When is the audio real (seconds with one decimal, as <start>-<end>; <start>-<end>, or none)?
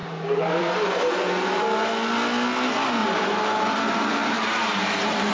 1.6-3.0